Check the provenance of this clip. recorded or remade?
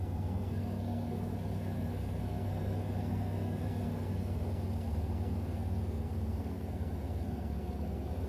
remade